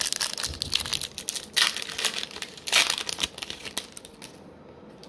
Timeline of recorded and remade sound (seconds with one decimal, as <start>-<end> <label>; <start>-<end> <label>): 0.0-5.1 recorded